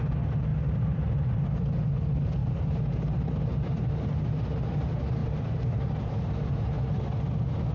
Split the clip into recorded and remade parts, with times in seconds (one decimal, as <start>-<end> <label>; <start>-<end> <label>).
0.0-0.5 recorded; 0.5-1.8 remade; 1.8-2.4 recorded; 2.4-3.0 remade; 3.0-5.2 recorded; 5.2-6.9 remade; 6.9-7.7 recorded